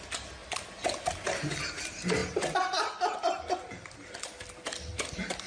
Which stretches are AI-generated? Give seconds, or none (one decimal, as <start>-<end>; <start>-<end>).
none